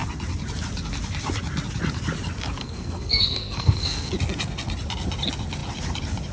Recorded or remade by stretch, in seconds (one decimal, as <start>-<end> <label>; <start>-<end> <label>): 0.0-2.6 recorded; 2.6-4.1 remade; 4.1-6.3 recorded